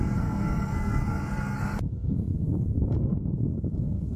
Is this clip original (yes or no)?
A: no